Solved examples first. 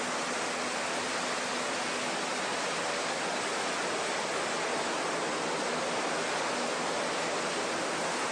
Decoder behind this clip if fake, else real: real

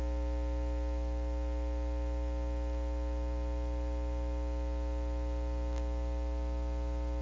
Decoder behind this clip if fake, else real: real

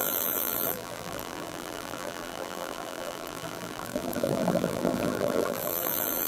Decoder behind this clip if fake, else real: fake, vocoder, BigVGAN v2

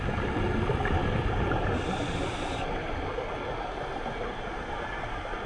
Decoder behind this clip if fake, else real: real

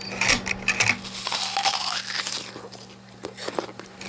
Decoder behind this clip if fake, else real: real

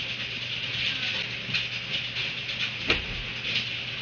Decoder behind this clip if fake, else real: real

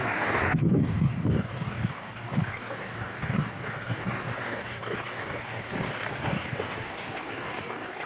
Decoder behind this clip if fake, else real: fake, codec, DAC